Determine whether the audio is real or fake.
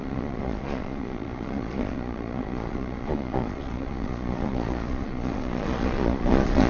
fake